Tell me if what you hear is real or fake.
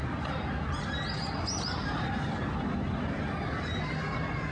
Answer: real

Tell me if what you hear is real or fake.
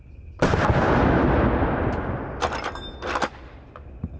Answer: real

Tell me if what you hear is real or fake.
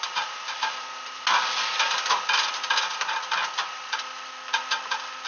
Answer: real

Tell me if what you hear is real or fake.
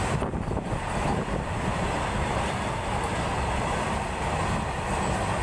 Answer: real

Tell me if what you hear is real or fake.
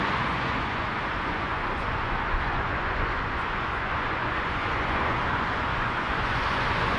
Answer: fake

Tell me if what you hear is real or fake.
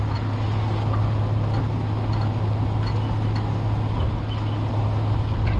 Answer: real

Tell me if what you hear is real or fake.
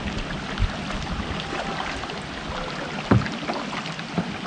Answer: real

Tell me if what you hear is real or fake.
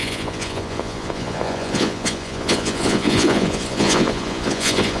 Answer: fake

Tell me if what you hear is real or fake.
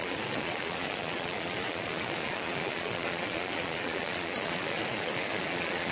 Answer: fake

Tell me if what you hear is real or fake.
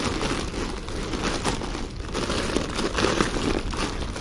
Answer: real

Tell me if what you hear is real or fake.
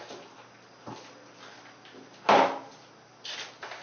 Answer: real